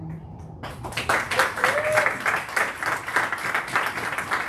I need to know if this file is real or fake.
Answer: real